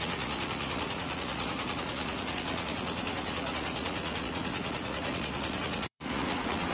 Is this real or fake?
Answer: fake